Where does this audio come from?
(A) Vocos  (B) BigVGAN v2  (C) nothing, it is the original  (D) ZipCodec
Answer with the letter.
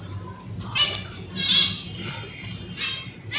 C